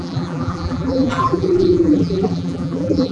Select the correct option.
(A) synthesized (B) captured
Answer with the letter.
A